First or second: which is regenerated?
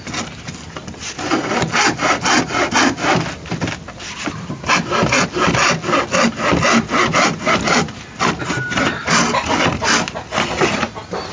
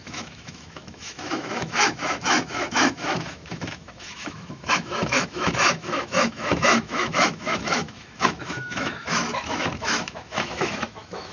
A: second